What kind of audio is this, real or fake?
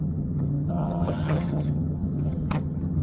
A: fake